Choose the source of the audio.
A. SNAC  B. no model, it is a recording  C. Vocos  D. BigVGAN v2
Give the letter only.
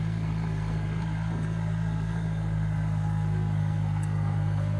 A